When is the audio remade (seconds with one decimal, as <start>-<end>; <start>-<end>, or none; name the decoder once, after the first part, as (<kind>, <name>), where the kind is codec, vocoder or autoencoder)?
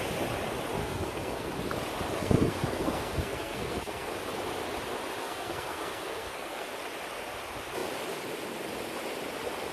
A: 0.8-1.5 (codec, SNAC); 2.2-4.1; 5.2-6.7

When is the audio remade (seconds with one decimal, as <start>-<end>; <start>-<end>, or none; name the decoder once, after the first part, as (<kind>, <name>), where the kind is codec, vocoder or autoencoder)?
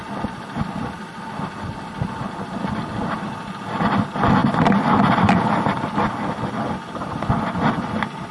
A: 4.4-5.8 (vocoder, BigVGAN v2)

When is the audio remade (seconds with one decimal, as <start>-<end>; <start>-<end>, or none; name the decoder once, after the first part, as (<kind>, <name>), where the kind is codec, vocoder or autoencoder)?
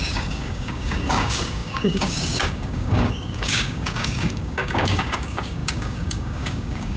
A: 0.0-7.0 (codec, DAC)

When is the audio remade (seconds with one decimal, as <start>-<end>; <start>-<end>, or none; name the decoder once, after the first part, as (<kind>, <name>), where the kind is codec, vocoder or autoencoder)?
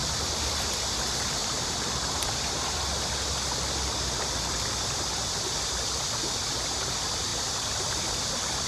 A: 1.4-5.4 (vocoder, BigVGAN v2); 7.3-8.0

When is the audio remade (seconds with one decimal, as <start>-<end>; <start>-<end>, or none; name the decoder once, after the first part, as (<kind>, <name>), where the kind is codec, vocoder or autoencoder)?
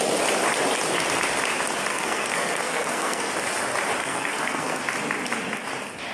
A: 1.9-3.3 (codec, SNAC); 4.0-4.8